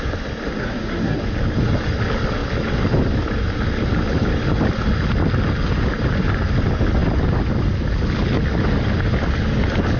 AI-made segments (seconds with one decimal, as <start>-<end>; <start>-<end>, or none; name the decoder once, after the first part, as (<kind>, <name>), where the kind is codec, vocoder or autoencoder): 0.6-1.2 (codec, SNAC)